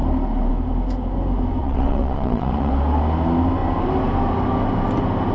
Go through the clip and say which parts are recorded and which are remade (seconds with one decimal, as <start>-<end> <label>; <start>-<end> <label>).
0.0-1.6 recorded; 1.6-2.7 remade; 2.7-5.3 recorded